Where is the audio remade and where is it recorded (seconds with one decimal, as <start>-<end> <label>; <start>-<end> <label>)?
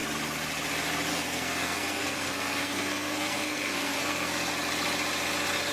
0.0-1.1 recorded; 1.1-4.5 remade; 4.5-5.7 recorded